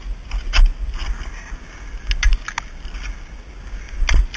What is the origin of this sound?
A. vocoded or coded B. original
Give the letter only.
B